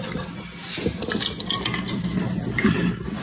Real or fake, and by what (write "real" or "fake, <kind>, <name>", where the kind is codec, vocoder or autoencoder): real